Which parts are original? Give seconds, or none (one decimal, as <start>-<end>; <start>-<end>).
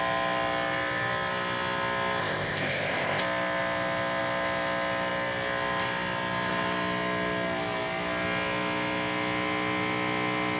0.0-2.2; 3.2-10.6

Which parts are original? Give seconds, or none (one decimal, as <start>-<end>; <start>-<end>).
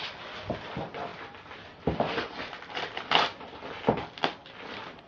0.0-5.1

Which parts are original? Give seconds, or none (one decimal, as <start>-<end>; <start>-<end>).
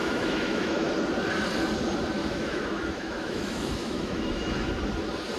0.9-2.2; 4.7-5.4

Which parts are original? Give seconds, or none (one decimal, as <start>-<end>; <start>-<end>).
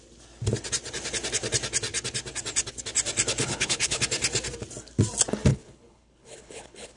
0.0-3.4; 4.0-5.5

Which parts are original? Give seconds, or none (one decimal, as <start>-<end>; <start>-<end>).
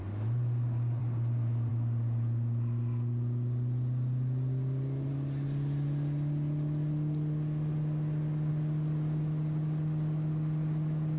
0.0-11.2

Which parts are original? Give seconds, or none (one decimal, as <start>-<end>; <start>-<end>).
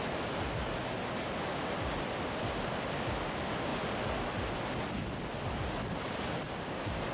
0.0-7.1